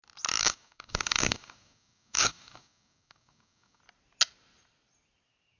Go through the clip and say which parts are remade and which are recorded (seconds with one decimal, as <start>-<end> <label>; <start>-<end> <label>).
0.0-0.4 recorded; 0.4-3.8 remade; 3.8-5.6 recorded